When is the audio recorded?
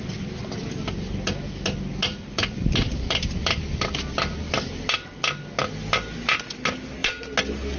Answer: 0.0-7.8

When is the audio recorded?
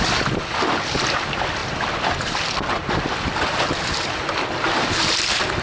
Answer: 0.0-5.6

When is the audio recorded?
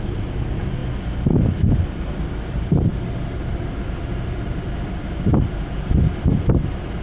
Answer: 0.8-1.7; 5.3-7.0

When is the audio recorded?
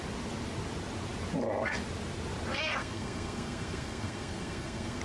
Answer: 0.0-2.8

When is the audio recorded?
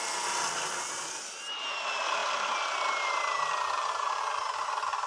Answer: 0.0-5.1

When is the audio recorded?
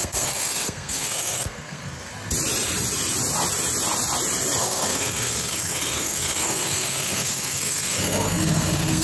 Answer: 2.1-4.6